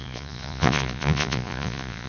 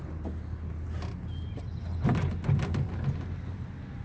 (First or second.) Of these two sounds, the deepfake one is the first